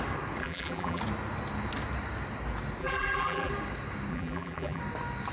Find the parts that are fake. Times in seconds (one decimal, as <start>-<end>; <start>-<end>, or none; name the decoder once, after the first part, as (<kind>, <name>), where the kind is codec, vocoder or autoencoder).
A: 0.4-1.0 (vocoder, BigVGAN v2); 2.8-3.5; 4.1-4.8

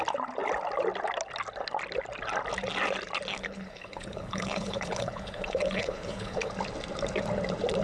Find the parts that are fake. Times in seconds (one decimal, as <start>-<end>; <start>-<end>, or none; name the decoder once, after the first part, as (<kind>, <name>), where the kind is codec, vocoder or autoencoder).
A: 3.3-6.5 (codec, HILCodec)

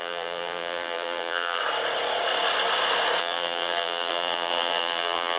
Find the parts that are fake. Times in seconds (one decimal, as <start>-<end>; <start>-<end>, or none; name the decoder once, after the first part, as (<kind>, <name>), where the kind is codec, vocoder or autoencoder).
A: 0.0-1.6 (vocoder, BigVGAN v2); 3.2-5.4

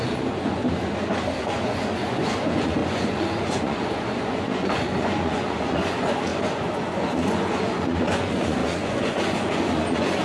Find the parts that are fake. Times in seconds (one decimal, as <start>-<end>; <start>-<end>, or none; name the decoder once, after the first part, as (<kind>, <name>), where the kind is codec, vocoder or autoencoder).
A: 0.0-0.6 (vocoder, Vocos); 1.4-10.2

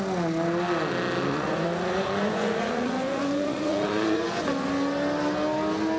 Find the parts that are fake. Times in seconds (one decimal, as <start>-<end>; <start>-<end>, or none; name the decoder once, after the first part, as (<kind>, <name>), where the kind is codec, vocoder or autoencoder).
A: 1.3-4.5 (vocoder, Vocos)

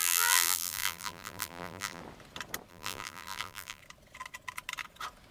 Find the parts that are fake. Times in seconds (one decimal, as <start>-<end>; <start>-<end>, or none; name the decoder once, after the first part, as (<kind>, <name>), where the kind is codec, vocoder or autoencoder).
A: 0.0-2.0 (vocoder, BigVGAN v2); 2.7-3.8